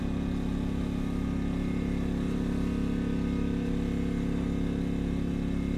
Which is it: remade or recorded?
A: recorded